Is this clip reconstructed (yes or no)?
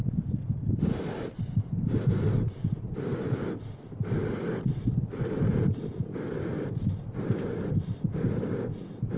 no